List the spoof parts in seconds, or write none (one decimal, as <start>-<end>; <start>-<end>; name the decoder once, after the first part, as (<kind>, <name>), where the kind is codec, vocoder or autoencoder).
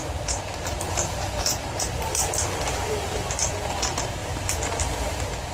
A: 0.5-3.4 (vocoder, BigVGAN v2); 4.2-5.5